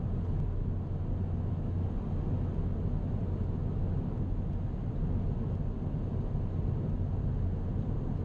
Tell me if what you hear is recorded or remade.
recorded